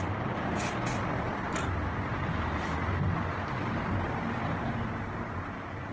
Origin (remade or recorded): recorded